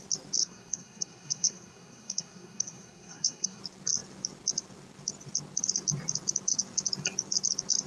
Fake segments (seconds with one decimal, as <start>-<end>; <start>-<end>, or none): 0.4-3.6

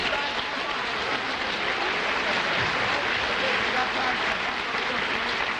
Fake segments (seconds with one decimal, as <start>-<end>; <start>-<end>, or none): none

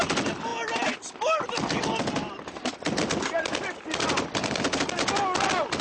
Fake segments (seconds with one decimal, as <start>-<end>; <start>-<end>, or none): none

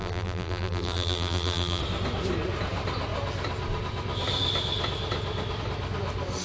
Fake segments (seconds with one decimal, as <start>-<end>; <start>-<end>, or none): 0.0-1.8

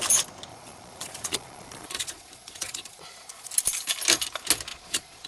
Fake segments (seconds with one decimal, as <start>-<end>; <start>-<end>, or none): 0.5-3.5; 4.7-5.3